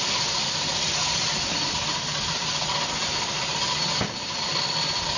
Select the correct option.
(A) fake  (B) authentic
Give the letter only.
A